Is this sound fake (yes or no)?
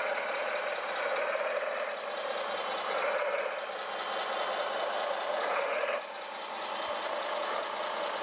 yes